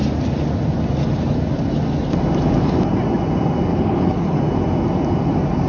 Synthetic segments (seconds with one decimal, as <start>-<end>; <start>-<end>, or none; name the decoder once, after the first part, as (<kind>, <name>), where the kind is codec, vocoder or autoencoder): 3.7-4.4 (codec, HILCodec)